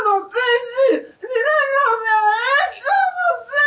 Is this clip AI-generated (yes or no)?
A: no